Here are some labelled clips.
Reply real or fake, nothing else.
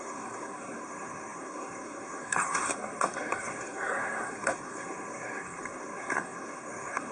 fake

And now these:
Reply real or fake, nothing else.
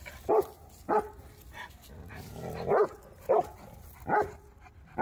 real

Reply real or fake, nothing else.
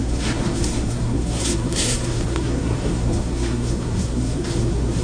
fake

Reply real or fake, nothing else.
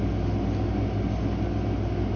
real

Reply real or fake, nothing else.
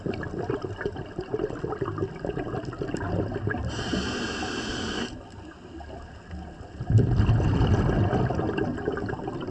real